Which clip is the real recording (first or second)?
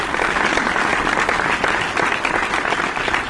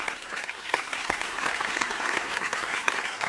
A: first